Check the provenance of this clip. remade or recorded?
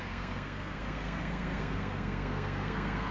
remade